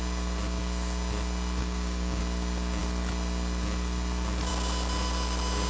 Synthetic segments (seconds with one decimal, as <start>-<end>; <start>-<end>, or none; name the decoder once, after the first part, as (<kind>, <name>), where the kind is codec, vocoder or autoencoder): 1.6-2.2 (codec, DAC)